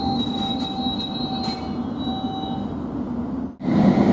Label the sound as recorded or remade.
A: recorded